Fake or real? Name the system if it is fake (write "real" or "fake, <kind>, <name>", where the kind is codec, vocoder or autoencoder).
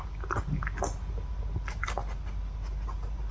real